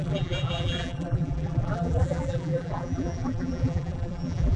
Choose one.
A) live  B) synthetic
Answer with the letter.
B